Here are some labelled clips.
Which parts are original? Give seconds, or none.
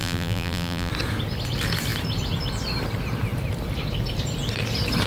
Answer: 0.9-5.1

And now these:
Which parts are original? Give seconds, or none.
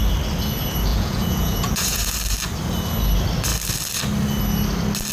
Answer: 0.0-0.9; 2.1-5.1